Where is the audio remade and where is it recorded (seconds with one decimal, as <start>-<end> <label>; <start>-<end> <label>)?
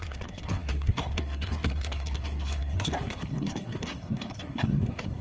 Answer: 0.0-5.2 remade